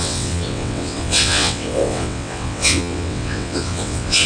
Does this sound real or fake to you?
fake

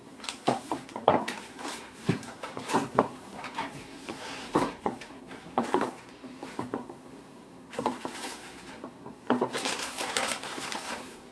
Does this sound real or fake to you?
fake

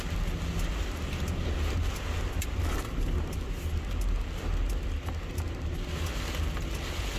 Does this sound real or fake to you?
real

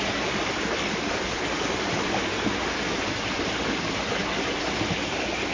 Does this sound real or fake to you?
real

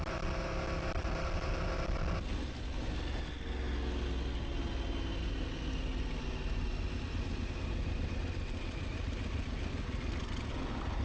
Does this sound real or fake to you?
real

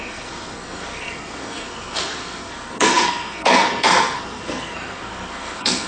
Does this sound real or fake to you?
fake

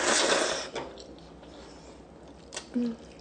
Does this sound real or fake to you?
real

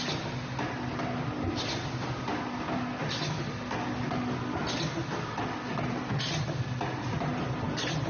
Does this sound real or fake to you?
real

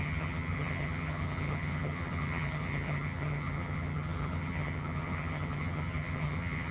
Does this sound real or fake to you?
fake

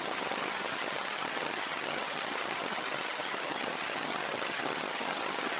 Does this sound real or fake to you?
fake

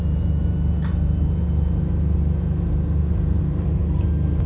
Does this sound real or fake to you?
real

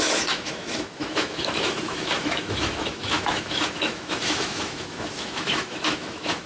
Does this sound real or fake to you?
fake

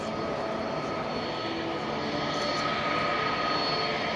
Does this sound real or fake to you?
real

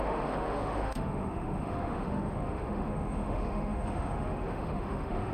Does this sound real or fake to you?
fake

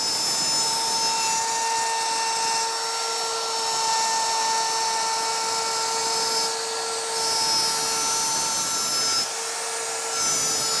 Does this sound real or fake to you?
real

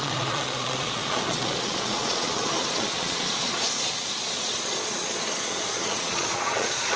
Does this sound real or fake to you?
fake